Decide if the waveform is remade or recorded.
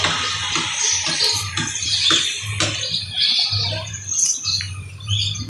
recorded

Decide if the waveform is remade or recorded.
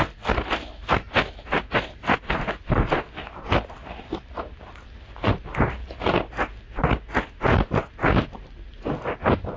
recorded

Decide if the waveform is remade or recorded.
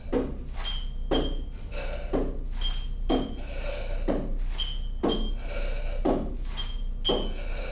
recorded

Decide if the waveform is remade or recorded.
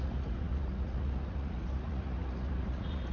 remade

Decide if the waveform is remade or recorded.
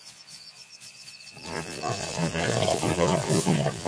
remade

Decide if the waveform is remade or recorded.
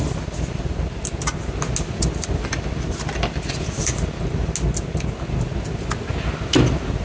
recorded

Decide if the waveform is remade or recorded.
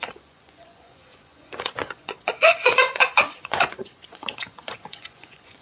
remade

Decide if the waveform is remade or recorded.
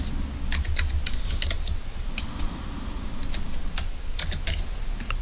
recorded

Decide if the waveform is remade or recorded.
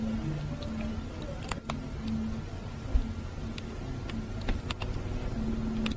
recorded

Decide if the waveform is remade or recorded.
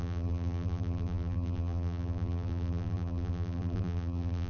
remade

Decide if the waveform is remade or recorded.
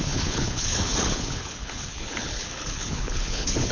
remade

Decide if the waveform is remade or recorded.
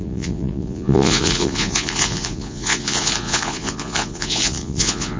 remade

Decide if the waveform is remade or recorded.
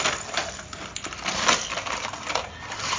recorded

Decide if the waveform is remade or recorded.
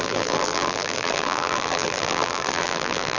remade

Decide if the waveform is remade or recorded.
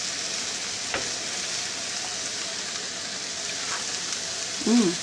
recorded